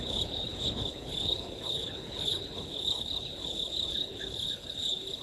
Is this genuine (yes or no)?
no